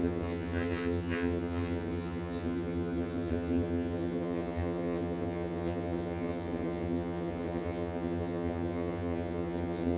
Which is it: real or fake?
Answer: fake